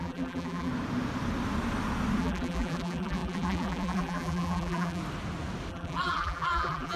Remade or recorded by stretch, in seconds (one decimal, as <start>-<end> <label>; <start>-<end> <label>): 0.0-0.7 remade; 0.7-2.2 recorded; 2.2-5.0 remade; 5.0-5.7 recorded; 5.7-7.0 remade